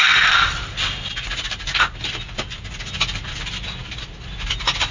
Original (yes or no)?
yes